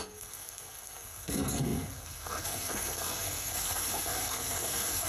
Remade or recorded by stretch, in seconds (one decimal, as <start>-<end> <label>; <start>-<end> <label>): 0.0-5.1 remade